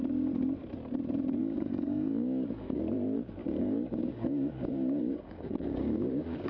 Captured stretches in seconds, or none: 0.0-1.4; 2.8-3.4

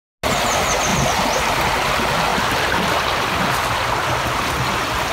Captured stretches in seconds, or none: 0.0-5.1

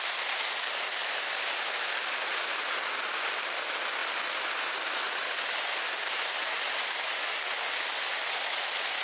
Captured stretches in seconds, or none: 0.0-4.0; 5.8-9.0